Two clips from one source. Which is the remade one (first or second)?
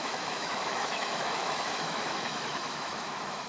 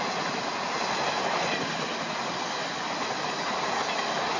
first